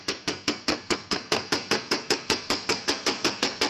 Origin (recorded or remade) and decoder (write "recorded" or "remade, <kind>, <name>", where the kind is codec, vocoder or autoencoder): remade, codec, SNAC